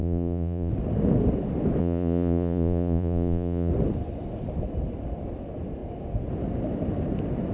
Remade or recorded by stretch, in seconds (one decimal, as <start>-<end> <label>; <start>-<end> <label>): 0.0-0.7 remade; 0.7-1.8 recorded; 1.8-3.7 remade; 3.7-7.5 recorded